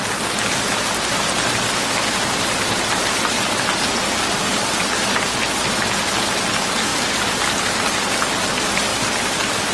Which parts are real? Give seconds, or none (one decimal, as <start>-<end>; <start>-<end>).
4.2-6.9; 7.7-9.7

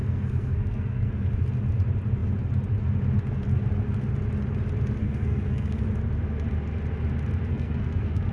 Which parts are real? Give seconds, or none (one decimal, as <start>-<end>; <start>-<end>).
1.1-5.0; 5.8-7.5

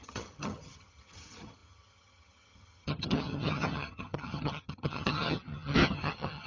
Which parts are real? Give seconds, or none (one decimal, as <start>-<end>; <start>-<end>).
none

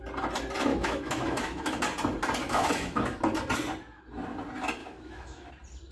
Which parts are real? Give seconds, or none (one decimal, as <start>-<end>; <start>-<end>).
0.0-0.7; 1.8-2.4; 3.2-4.8; 5.5-5.9

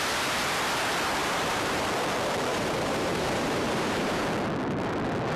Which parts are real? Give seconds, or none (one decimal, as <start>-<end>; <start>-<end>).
0.0-1.2; 1.9-2.5; 4.2-5.4

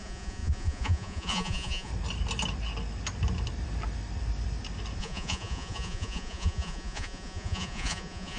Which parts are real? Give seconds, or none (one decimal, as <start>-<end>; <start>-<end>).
1.9-5.0

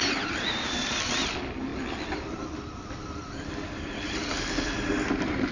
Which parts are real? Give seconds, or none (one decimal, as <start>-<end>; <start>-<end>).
1.7-2.9

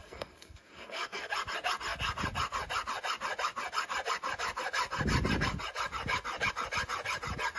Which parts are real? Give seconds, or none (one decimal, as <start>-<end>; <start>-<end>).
1.3-7.6